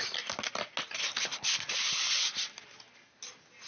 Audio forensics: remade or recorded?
recorded